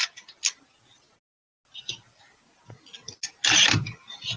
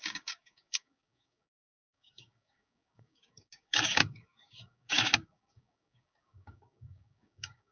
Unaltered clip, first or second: first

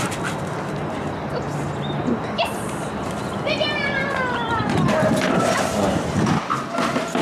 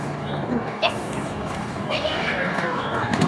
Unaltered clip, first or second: first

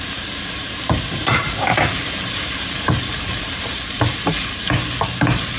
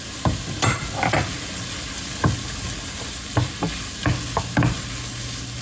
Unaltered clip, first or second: second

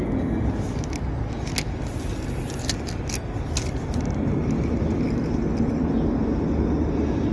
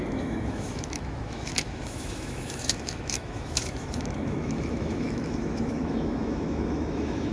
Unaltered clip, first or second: first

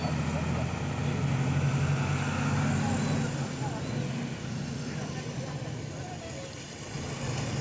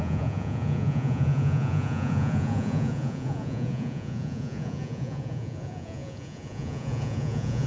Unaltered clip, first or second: first